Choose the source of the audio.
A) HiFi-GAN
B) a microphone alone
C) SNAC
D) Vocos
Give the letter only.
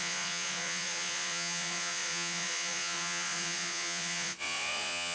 D